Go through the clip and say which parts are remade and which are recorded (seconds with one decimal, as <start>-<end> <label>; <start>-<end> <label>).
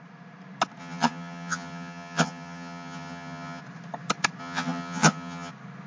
0.0-0.8 recorded; 0.8-3.6 remade; 3.6-4.4 recorded; 4.4-5.5 remade; 5.5-5.9 recorded